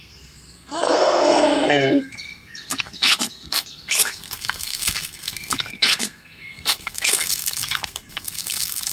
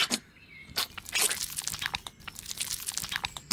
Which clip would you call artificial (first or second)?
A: first